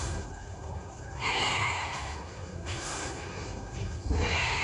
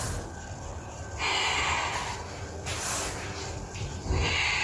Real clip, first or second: second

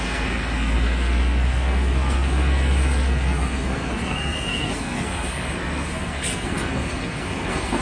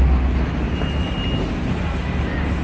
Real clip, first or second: second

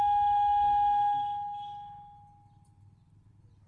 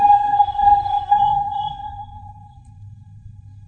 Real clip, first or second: first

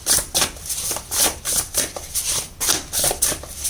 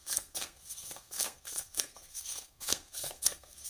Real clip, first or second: first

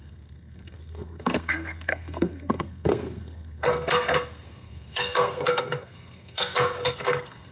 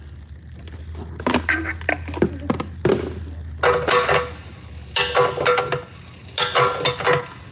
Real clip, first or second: second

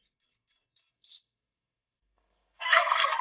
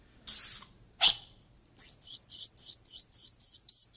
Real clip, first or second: second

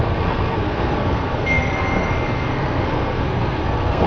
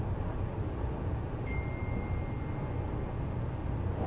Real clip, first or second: second